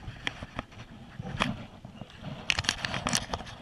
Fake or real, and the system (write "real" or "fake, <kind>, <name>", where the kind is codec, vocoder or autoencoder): real